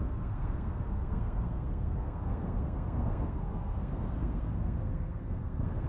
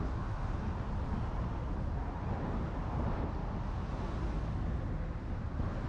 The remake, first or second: first